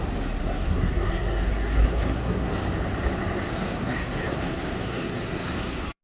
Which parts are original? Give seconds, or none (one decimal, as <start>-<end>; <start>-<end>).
0.0-0.4; 2.5-3.5